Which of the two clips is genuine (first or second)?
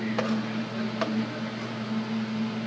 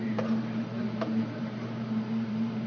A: first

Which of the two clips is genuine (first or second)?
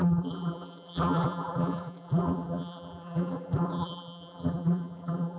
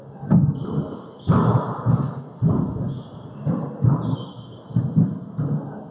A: second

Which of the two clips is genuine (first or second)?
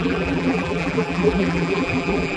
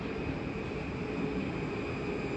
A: second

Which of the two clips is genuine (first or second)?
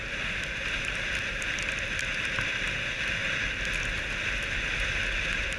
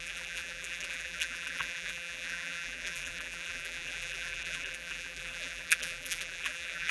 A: first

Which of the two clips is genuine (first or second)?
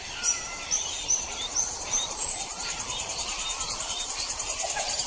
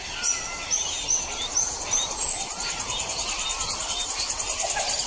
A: second